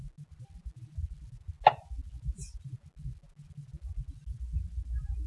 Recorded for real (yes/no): yes